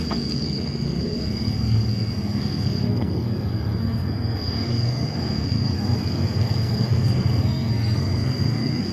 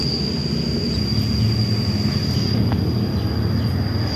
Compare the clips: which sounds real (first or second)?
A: second